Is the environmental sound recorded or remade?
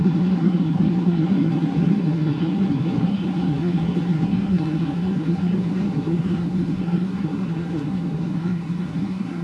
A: remade